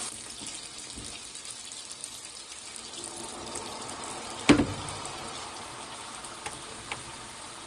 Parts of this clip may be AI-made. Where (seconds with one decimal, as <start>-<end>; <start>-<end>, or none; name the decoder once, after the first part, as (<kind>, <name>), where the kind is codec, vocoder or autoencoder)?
3.3-5.8 (vocoder, BigVGAN v2)